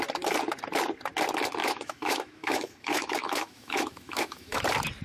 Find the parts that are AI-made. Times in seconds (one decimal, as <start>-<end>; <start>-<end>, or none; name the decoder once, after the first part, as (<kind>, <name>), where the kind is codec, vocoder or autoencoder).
1.6-4.6 (autoencoder, DAC-VAE)